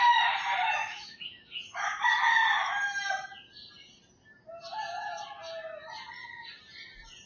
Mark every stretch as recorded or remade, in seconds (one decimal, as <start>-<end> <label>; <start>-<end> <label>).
0.0-0.8 recorded; 0.8-1.7 remade; 1.7-7.3 recorded